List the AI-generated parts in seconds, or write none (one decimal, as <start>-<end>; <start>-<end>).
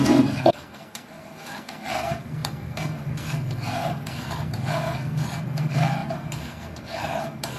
0.0-7.6